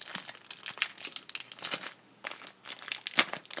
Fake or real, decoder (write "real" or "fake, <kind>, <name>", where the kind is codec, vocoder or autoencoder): real